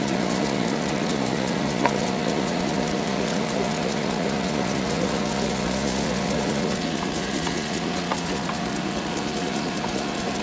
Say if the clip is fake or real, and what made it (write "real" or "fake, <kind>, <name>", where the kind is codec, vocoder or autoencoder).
fake, vocoder, Vocos